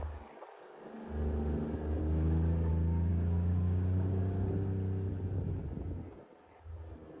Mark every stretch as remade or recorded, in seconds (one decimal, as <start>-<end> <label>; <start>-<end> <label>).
0.0-2.0 recorded; 2.0-2.7 remade; 2.7-3.1 recorded; 3.1-4.2 remade; 4.2-7.2 recorded